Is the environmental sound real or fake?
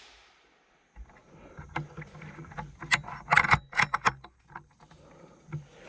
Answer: real